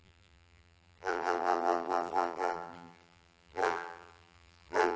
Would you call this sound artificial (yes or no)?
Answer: yes